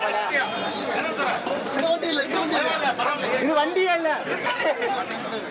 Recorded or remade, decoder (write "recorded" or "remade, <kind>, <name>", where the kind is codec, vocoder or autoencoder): recorded